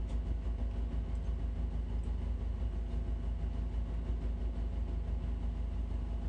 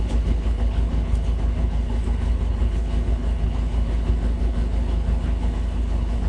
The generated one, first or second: second